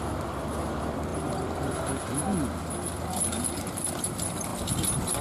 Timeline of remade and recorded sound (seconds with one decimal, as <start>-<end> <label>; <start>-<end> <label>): 0.0-4.5 remade; 4.5-5.2 recorded